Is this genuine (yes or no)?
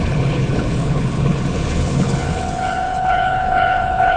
no